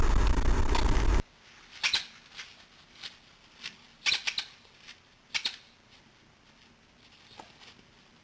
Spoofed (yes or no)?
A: no